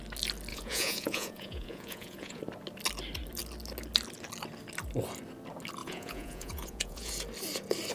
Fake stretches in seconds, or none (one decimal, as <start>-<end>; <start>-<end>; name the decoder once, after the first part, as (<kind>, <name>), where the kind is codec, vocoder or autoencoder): 0.5-2.4 (vocoder, Vocos); 5.8-7.1